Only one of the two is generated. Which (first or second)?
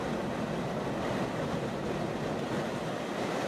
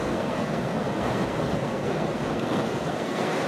second